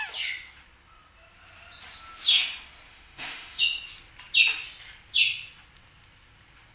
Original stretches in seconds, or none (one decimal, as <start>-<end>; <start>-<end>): 0.0-2.9; 3.6-6.7